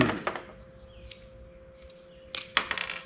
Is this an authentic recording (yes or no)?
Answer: yes